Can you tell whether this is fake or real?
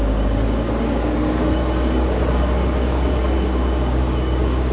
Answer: fake